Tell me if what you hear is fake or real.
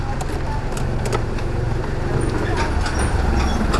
real